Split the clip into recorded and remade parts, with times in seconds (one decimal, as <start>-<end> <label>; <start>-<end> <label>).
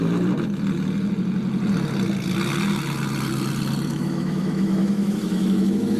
0.0-3.9 recorded; 3.9-6.0 remade